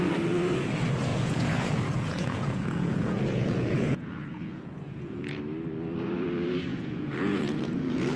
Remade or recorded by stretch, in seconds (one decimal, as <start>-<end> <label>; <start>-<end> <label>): 0.0-1.1 recorded; 1.1-5.4 remade; 5.4-6.7 recorded; 6.7-8.2 remade